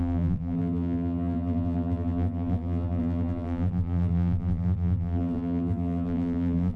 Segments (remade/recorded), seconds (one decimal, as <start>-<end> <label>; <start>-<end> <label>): 0.0-6.8 remade